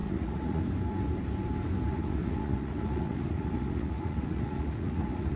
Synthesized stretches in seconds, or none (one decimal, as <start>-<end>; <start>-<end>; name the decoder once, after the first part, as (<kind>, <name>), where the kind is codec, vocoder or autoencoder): 0.0-0.6 (vocoder, Vocos); 1.9-5.4